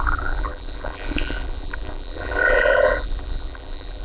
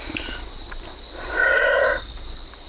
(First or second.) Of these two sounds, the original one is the second